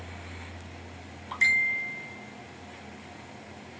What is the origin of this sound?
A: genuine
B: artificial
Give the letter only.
A